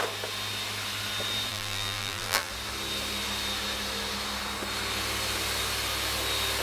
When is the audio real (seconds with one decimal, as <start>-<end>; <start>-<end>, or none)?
0.0-1.5; 2.5-6.6